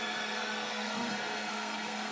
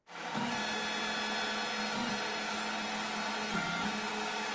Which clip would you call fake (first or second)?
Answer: first